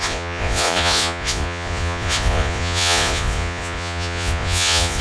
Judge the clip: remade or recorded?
remade